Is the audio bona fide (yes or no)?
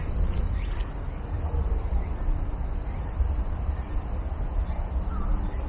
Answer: yes